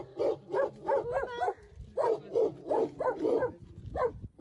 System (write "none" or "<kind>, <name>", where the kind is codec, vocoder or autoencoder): none